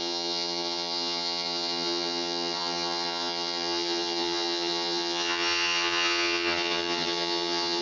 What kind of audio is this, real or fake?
fake